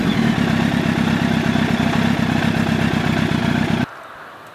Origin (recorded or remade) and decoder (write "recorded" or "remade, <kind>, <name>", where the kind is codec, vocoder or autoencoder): recorded